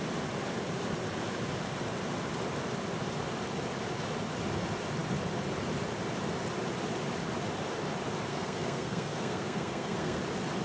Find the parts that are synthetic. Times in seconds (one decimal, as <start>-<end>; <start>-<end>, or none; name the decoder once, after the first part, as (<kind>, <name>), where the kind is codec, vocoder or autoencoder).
8.3-10.2 (codec, SNAC)